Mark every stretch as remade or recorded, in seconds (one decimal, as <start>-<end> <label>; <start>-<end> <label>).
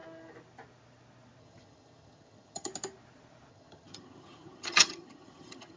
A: 0.0-1.4 recorded; 1.4-2.7 remade; 2.7-3.5 recorded; 3.5-5.8 remade